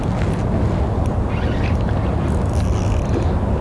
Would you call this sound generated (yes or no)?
no